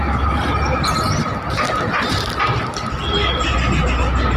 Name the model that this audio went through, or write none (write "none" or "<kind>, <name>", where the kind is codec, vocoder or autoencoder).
none